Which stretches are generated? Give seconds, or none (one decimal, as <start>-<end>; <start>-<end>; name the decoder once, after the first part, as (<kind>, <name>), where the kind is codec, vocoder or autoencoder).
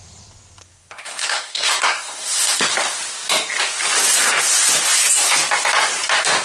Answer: 0.6-2.7 (codec, SNAC)